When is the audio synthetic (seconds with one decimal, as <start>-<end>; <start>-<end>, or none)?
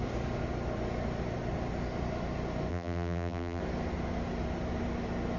2.7-3.6